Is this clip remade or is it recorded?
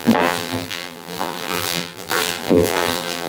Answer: remade